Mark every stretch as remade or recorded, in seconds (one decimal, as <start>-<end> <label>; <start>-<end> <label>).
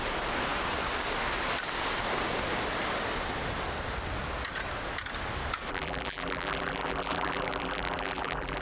0.0-5.7 recorded; 5.7-8.6 remade